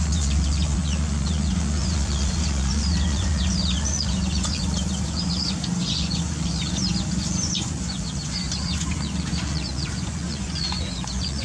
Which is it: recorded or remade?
remade